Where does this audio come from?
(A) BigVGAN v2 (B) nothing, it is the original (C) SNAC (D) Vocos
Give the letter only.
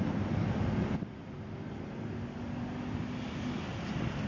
B